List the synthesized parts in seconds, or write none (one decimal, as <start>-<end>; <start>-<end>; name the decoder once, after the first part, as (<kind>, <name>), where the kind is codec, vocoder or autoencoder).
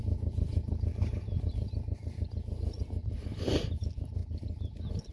none